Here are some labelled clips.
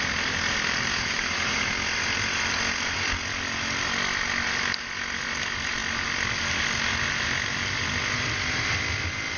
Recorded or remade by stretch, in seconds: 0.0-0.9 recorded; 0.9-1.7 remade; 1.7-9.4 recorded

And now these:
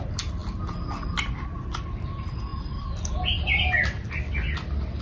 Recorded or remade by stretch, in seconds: 0.0-5.0 recorded

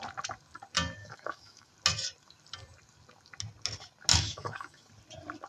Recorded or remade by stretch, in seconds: 0.0-1.0 recorded; 1.0-1.7 remade; 1.7-4.1 recorded; 4.1-4.9 remade; 4.9-5.5 recorded